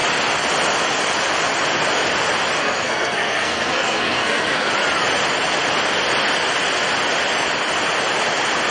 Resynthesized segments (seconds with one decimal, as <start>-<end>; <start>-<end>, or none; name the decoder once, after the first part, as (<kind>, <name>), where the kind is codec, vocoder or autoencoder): 2.6-4.7 (codec, SNAC)